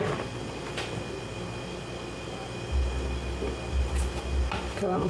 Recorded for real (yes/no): yes